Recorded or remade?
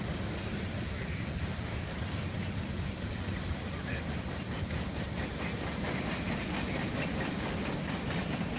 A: remade